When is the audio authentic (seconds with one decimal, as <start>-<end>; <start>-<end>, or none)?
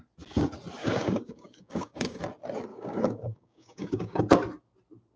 0.0-0.8; 2.2-2.7; 4.2-5.2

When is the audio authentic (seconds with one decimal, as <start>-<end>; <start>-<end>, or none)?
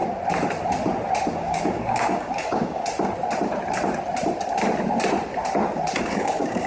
0.0-1.3; 2.8-6.0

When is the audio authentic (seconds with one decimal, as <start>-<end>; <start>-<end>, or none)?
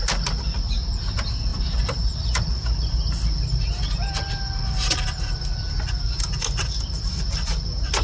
0.0-8.0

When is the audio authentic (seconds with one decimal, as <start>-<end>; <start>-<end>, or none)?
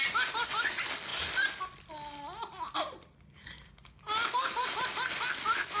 0.0-5.8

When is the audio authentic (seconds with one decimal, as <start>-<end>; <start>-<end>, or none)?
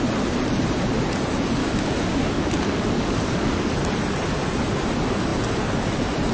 0.0-1.6; 3.7-6.3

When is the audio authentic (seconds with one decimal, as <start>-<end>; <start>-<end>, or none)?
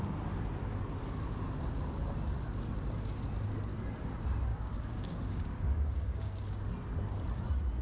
0.0-4.5; 6.7-7.8